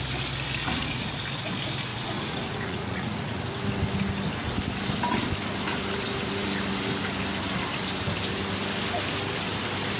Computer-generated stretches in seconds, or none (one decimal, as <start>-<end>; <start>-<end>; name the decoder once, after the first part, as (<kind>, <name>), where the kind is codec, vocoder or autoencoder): 0.6-1.2 (vocoder, Vocos); 1.9-3.4